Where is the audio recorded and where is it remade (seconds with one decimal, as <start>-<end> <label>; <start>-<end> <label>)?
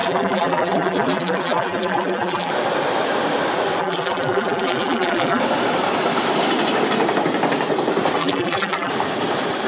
0.0-2.5 remade; 2.5-3.8 recorded; 3.8-5.4 remade; 5.4-8.2 recorded; 8.2-8.9 remade; 8.9-9.7 recorded